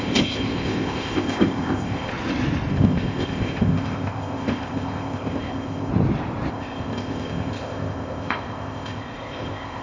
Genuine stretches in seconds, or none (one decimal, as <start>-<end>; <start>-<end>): 2.1-2.7; 5.9-6.5